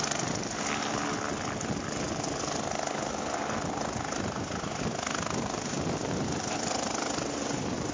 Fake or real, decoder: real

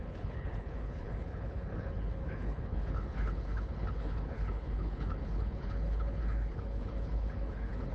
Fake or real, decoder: fake, codec, HILCodec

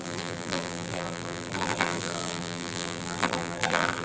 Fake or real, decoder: fake, vocoder, BigVGAN v2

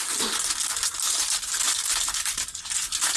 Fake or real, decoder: real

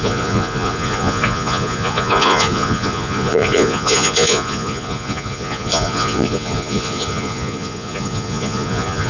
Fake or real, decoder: fake, vocoder, Vocos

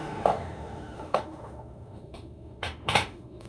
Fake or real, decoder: fake, autoencoder, DAC-VAE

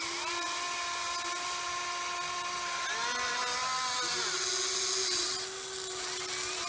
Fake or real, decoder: real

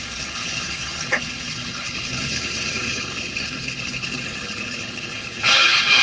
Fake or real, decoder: fake, codec, HILCodec